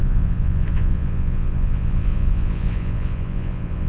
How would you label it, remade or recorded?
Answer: remade